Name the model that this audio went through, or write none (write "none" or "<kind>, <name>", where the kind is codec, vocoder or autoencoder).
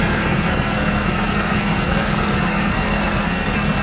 codec, SNAC